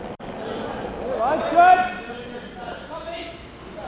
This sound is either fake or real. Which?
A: real